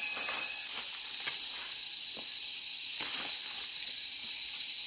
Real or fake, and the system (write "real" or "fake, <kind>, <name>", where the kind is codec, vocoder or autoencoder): real